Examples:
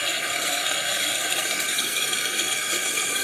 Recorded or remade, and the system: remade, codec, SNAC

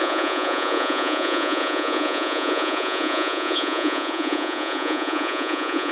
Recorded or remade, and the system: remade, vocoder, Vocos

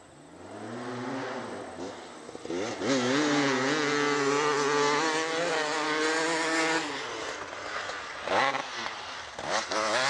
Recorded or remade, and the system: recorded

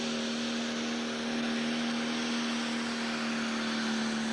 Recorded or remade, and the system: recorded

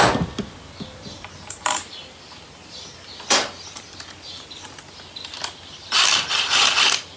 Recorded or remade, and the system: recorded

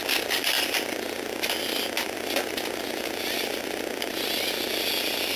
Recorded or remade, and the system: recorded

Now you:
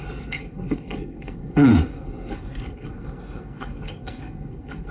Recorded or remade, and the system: remade, codec, SNAC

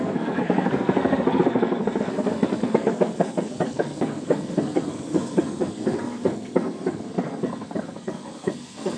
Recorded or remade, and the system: remade, codec, SNAC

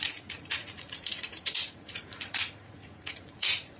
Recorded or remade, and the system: remade, vocoder, Vocos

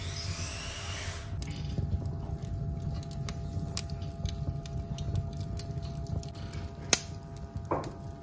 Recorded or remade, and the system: recorded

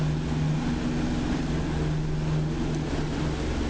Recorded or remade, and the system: recorded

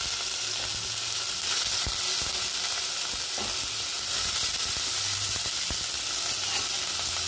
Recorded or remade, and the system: recorded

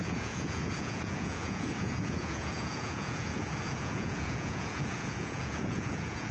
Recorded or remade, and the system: remade, vocoder, Vocos